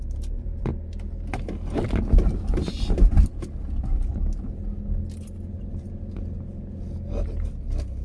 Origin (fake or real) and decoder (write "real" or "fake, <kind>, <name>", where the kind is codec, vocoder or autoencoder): real